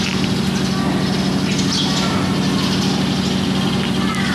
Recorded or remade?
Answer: recorded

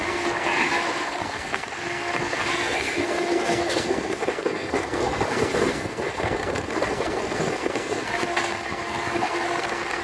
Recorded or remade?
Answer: remade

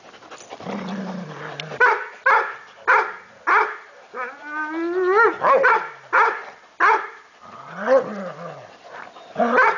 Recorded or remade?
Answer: recorded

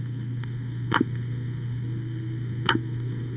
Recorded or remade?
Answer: remade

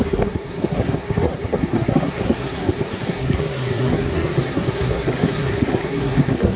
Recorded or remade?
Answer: remade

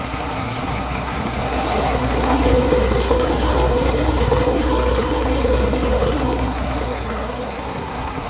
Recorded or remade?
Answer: remade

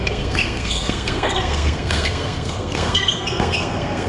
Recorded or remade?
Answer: remade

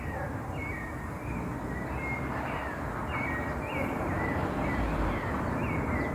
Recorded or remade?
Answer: recorded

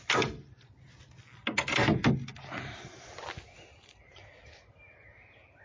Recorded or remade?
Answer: recorded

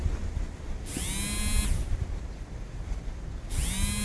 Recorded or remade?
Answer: recorded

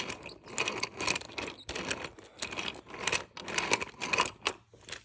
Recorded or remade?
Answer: recorded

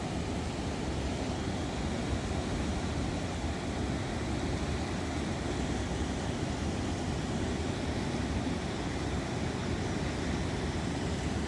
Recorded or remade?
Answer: recorded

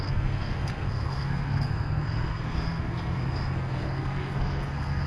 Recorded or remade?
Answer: remade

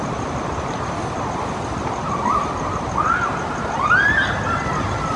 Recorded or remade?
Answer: recorded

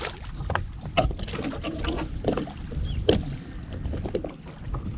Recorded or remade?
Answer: recorded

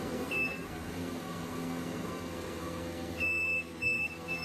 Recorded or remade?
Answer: remade